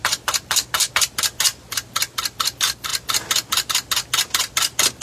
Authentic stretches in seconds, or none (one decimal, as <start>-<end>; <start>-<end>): 0.0-5.0